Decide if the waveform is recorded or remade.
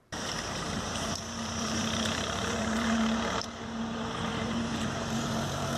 remade